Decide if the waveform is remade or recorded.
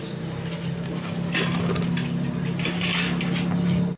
recorded